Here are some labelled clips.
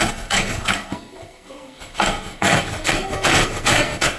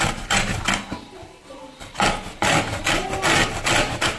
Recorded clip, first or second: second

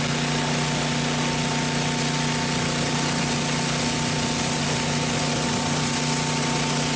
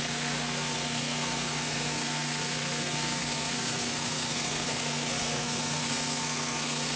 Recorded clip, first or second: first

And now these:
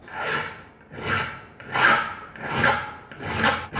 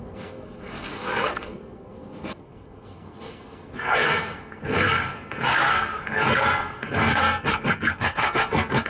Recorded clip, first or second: first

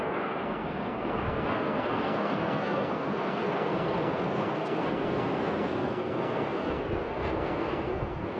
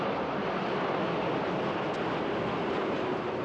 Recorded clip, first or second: second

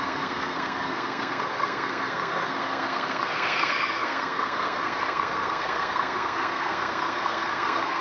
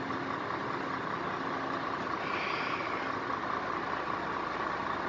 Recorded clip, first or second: second